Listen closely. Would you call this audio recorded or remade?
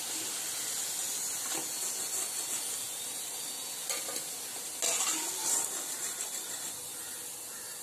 recorded